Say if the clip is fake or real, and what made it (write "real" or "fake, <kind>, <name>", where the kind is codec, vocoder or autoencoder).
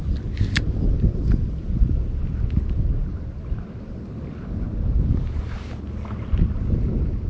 real